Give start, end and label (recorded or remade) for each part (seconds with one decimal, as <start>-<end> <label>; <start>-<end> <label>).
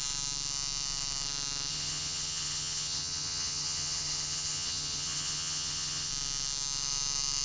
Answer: 0.0-1.7 recorded; 1.7-6.1 remade; 6.1-7.4 recorded